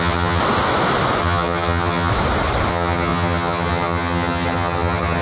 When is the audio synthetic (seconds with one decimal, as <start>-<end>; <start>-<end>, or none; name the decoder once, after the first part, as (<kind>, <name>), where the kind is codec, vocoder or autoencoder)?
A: 0.0-0.4 (vocoder, HiFi-GAN); 1.2-2.1; 2.7-5.2